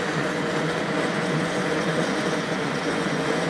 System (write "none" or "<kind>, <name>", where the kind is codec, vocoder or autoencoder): vocoder, Vocos